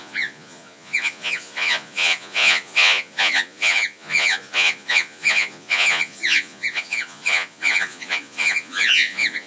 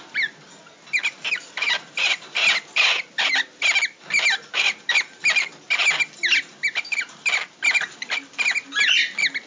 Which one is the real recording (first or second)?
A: second